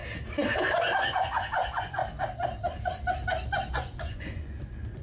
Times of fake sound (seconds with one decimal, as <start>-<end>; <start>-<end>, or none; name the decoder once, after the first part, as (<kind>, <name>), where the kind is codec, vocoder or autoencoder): 1.0-2.0 (vocoder, Vocos); 3.7-5.0